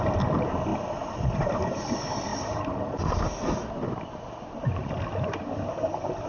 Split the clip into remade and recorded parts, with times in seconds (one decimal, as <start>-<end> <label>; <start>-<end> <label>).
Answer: 0.0-6.3 recorded